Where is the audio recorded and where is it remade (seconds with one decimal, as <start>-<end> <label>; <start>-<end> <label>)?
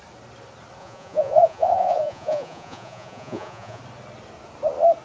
0.0-0.8 recorded; 0.8-3.8 remade; 3.8-5.0 recorded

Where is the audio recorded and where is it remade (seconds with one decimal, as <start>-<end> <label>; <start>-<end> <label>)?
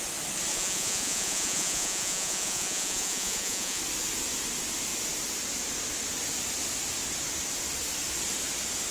0.0-0.5 recorded; 0.5-3.8 remade; 3.8-8.9 recorded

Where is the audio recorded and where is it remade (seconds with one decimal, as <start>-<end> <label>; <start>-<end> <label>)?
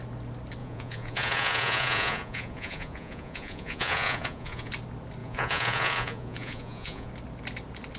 0.0-0.6 recorded; 0.6-4.7 remade; 4.7-5.2 recorded; 5.2-7.1 remade; 7.1-8.0 recorded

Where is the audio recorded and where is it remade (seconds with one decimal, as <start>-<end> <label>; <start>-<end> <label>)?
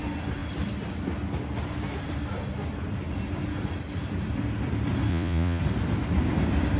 0.0-5.1 recorded; 5.1-5.6 remade; 5.6-6.8 recorded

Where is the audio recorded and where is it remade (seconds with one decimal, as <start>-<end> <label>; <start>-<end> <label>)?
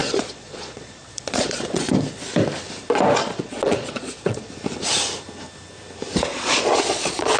0.0-1.9 remade; 1.9-3.2 recorded; 3.2-4.5 remade; 4.5-6.3 recorded; 6.3-7.4 remade